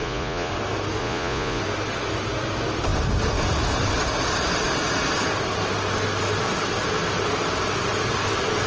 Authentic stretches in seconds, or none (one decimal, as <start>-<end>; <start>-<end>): 0.5-1.0; 1.6-8.7